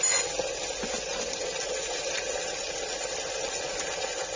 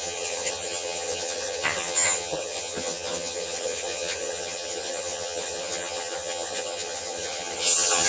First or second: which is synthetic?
second